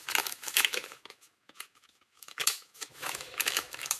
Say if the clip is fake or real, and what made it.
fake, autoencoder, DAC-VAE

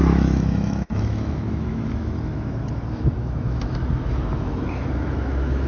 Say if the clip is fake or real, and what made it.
fake, autoencoder, DAC-VAE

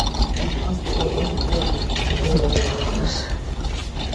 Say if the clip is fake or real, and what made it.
real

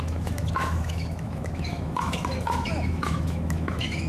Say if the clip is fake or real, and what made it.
fake, autoencoder, DAC-VAE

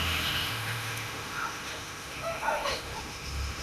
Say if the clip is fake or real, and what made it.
fake, autoencoder, DAC-VAE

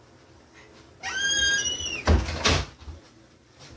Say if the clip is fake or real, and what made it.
real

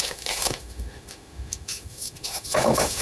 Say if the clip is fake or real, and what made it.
fake, autoencoder, DAC-VAE